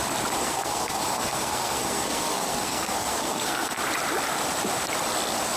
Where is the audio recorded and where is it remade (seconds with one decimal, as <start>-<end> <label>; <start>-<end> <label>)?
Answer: 0.0-0.4 recorded; 0.4-3.8 remade; 3.8-5.6 recorded